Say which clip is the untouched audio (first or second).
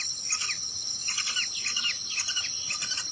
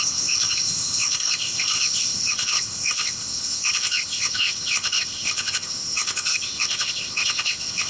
first